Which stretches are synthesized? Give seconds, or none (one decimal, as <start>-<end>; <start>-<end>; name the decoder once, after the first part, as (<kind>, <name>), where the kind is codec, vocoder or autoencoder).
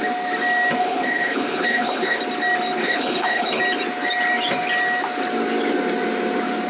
0.8-2.2 (codec, HILCodec); 2.8-3.6